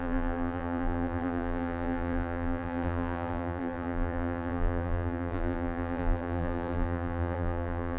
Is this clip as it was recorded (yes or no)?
no